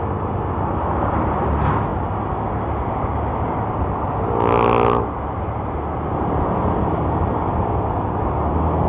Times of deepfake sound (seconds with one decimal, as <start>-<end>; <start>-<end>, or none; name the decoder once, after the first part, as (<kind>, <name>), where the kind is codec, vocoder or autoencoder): none

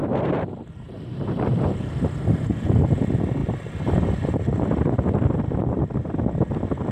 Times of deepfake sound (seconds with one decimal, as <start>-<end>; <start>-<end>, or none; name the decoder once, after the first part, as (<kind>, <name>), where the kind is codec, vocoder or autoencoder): 0.0-1.8 (vocoder, BigVGAN v2)

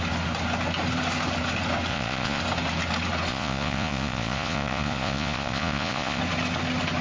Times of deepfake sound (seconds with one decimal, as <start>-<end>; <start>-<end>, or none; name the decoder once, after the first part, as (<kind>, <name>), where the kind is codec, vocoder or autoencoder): 1.9-2.4 (vocoder, Vocos); 3.3-6.2

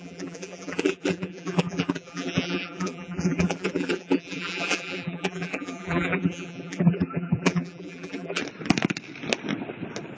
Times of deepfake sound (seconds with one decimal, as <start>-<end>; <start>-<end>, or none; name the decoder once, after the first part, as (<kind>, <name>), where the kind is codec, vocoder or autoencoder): 0.0-8.4 (vocoder, BigVGAN v2)

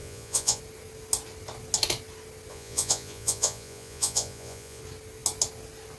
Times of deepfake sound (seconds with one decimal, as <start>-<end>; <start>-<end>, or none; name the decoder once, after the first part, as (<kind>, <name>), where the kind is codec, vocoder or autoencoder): 0.0-0.6 (vocoder, Vocos); 2.5-4.8